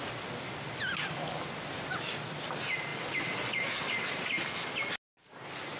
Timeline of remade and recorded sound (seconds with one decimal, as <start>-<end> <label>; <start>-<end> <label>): 0.0-5.8 recorded